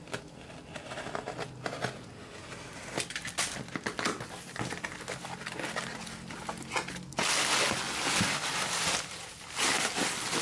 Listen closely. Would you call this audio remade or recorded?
recorded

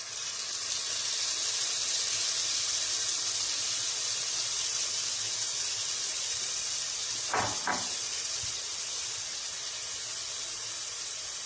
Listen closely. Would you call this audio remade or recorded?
recorded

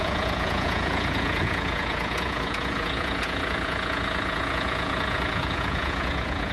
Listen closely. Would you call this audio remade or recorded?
remade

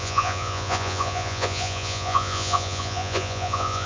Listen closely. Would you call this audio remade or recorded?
remade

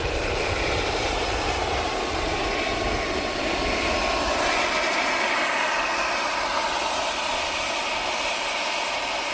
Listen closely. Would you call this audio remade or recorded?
recorded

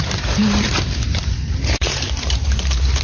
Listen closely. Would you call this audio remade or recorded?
remade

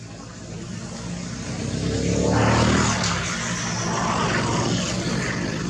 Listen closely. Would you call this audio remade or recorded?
recorded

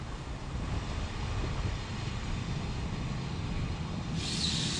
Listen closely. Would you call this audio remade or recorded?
recorded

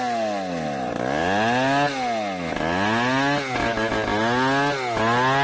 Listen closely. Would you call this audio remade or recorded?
recorded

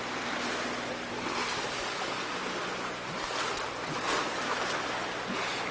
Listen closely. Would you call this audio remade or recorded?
recorded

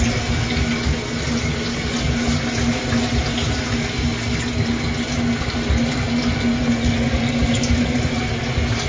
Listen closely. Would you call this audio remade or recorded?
recorded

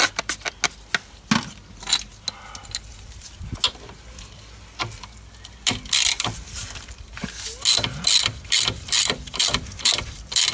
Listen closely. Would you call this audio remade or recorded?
recorded